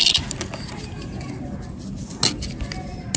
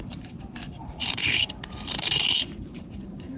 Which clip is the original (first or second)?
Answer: first